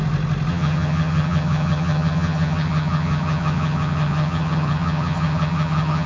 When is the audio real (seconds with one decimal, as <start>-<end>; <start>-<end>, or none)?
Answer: 0.0-0.5